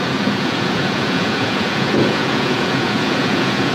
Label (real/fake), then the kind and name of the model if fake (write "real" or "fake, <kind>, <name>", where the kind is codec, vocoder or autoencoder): fake, vocoder, Vocos